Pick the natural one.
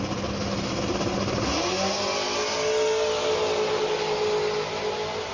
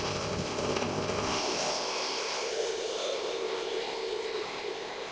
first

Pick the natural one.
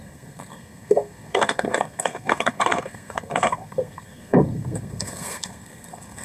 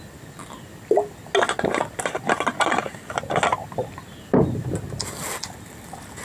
second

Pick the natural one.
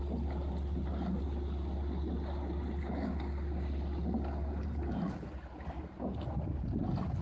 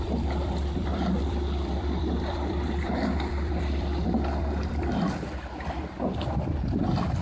first